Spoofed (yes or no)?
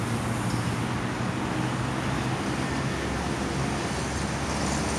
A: no